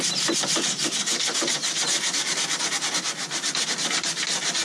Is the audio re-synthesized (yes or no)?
no